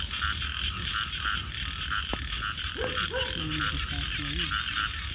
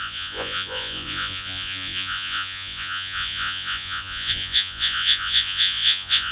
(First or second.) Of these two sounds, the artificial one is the second